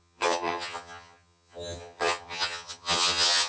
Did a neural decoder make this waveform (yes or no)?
yes